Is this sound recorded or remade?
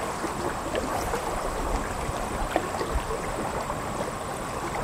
recorded